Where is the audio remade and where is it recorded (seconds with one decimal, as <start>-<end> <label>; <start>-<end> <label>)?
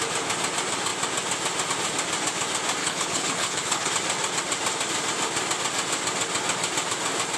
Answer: 0.0-2.8 recorded; 2.8-3.9 remade; 3.9-7.4 recorded